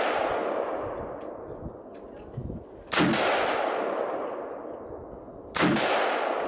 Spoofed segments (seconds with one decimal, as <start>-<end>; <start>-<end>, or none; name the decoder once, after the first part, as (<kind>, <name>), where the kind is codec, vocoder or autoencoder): none